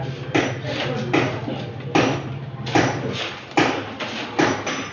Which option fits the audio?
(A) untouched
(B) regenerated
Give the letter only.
A